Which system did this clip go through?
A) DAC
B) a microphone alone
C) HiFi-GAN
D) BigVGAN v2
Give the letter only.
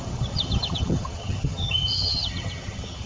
C